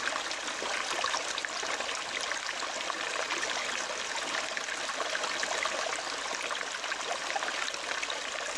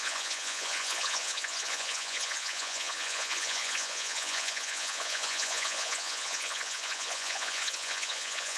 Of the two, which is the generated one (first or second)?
second